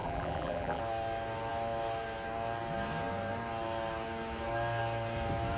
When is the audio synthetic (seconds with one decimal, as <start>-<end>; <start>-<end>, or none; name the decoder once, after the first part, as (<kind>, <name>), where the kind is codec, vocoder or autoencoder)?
0.0-0.8 (vocoder, BigVGAN v2)